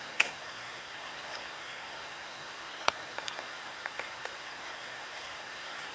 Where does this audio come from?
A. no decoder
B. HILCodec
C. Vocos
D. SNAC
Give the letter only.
D